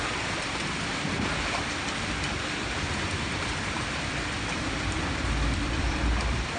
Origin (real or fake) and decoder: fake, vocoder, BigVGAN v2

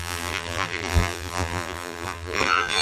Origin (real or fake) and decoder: fake, vocoder, BigVGAN v2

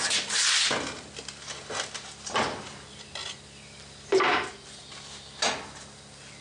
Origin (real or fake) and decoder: real